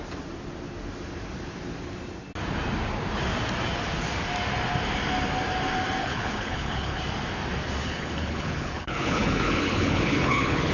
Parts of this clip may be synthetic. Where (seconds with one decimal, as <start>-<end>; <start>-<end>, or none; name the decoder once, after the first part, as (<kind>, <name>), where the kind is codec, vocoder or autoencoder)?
6.0-7.0 (codec, HILCodec); 7.8-10.7